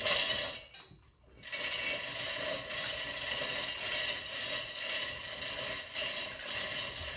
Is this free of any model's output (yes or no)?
yes